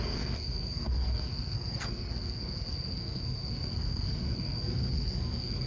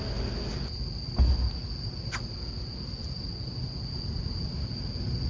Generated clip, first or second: first